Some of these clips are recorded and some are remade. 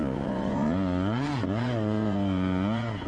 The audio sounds remade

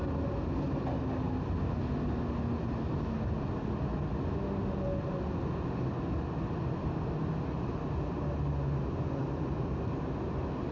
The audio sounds recorded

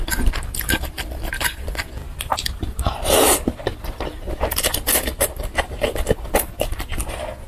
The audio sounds recorded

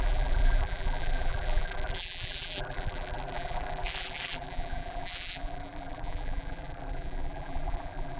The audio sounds remade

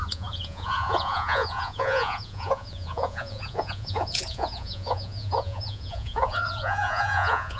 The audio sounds remade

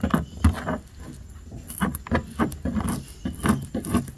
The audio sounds recorded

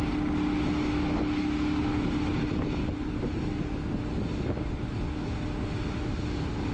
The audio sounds recorded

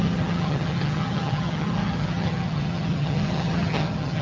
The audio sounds remade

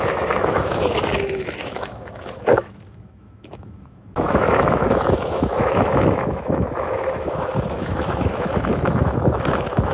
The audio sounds remade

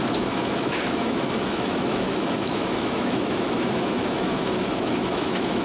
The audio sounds remade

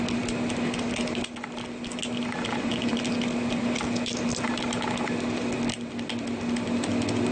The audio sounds recorded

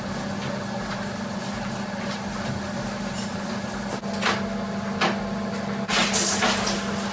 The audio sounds recorded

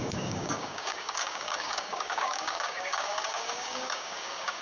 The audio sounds remade